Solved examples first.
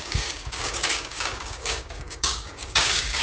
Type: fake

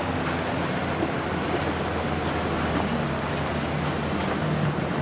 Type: real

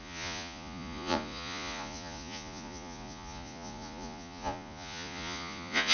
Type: fake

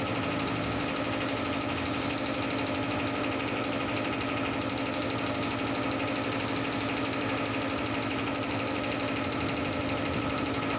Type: real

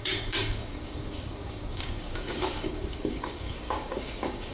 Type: fake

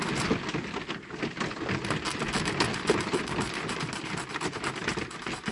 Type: real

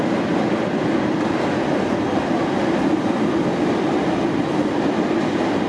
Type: real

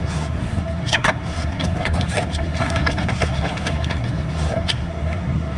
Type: fake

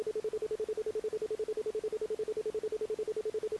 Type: real